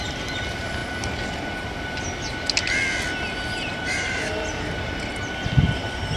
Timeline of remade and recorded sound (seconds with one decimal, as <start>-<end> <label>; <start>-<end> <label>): 0.0-3.7 recorded; 3.7-5.1 remade; 5.1-6.2 recorded